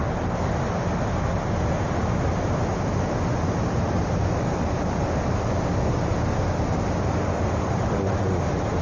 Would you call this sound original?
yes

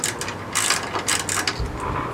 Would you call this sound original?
yes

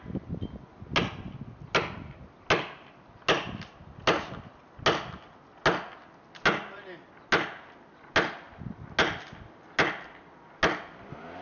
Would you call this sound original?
yes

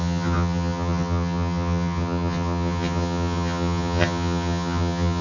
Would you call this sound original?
no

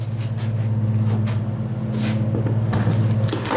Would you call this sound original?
yes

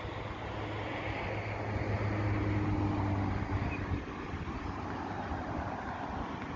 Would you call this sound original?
yes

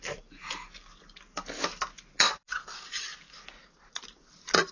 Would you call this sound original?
yes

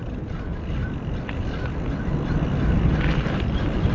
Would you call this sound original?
yes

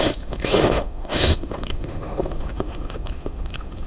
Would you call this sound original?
no